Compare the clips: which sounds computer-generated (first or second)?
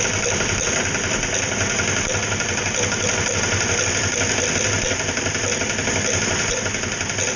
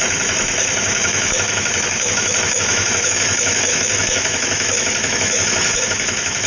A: second